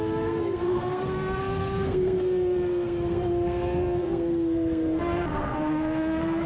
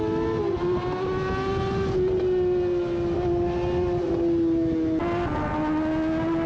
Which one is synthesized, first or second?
first